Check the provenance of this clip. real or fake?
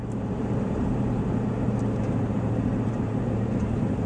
fake